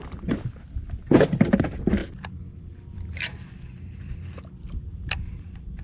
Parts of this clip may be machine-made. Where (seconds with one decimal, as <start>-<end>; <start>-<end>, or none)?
2.0-4.0